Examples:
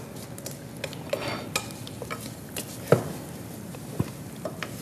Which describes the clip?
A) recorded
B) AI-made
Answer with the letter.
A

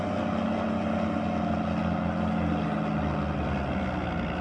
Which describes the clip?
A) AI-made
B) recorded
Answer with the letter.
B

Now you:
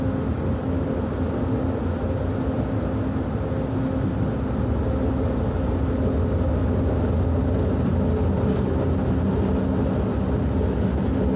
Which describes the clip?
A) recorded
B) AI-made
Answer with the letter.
A